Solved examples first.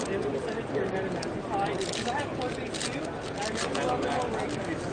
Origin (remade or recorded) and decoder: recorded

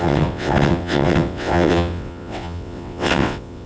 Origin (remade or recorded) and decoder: remade, vocoder, WaveNeXt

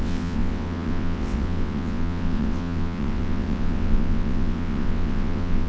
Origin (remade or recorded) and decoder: remade, vocoder, WaveNeXt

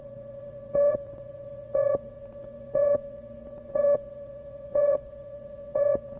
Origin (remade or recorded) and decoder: remade, vocoder, WaveNeXt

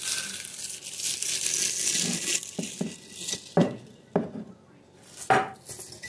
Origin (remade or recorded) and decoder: recorded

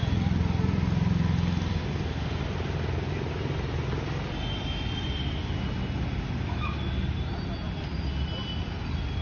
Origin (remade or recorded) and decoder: recorded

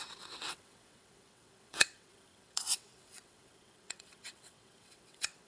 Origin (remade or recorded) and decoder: remade, vocoder, WaveNeXt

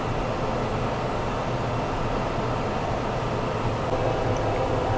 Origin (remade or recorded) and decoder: recorded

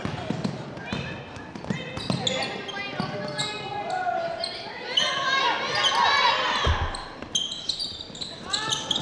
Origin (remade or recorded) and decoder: recorded